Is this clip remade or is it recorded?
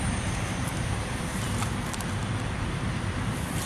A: remade